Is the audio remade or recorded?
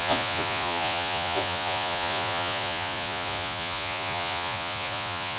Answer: remade